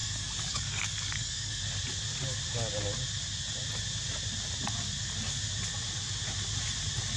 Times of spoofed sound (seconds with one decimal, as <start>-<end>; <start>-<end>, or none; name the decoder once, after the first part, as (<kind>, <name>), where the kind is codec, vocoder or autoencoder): 0.0-1.6 (codec, DAC)